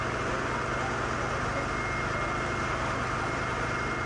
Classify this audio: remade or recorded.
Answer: recorded